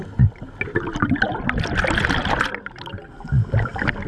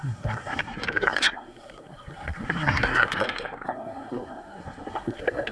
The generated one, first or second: second